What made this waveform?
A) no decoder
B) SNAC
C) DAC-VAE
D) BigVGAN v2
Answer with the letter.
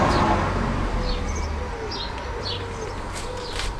A